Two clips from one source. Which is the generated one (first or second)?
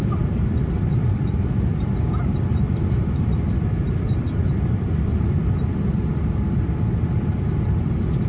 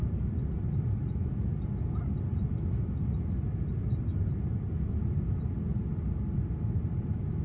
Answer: first